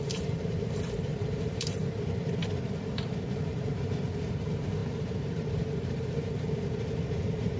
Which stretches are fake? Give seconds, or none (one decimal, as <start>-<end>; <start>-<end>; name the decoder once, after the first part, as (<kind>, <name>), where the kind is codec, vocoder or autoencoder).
0.0-1.8 (vocoder, BigVGAN v2); 2.7-7.6